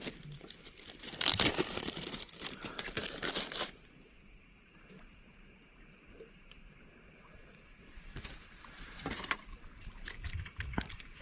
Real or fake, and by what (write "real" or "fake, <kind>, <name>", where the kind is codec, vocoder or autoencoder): fake, vocoder, BigVGAN v2